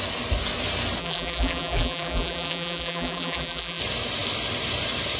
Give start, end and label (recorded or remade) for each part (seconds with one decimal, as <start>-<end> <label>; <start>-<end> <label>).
0.0-1.0 recorded; 1.0-3.8 remade; 3.8-5.2 recorded